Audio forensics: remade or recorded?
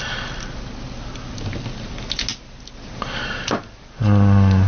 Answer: recorded